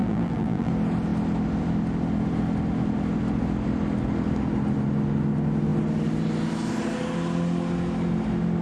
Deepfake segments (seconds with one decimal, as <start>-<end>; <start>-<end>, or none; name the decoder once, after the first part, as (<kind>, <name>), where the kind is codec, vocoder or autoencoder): 0.0-0.7 (vocoder, BigVGAN v2)